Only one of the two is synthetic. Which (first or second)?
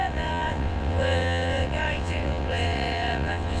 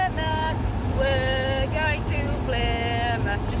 first